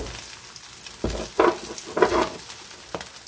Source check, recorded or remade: recorded